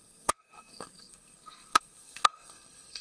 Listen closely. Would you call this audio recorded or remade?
remade